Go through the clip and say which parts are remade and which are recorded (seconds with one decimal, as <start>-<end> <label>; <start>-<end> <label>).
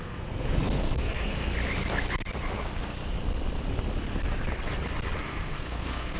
0.0-1.5 remade; 1.5-5.2 recorded; 5.2-6.2 remade